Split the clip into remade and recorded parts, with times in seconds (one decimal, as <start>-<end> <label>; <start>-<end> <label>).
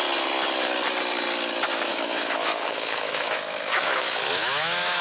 0.0-1.9 recorded; 1.9-5.0 remade